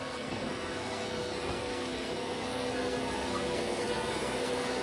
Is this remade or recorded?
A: remade